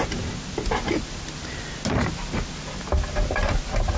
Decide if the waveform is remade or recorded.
recorded